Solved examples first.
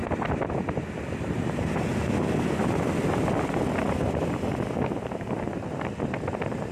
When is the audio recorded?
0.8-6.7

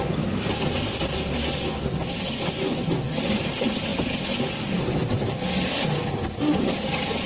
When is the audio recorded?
0.0-7.3

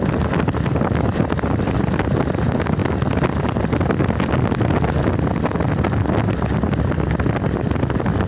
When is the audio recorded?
0.0-8.3